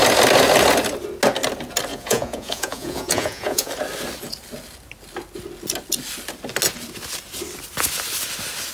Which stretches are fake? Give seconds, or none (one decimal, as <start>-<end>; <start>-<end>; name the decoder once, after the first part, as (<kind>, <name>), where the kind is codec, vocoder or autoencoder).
1.9-3.7 (vocoder, Vocos)